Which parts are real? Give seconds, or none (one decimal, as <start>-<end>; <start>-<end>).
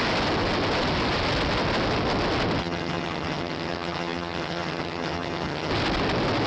0.0-2.6; 5.7-6.5